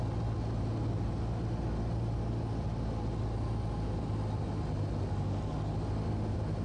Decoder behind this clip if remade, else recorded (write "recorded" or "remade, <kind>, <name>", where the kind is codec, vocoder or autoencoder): recorded